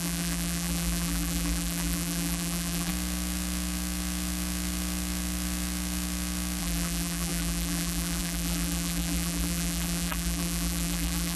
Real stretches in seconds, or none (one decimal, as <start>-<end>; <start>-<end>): 2.9-6.6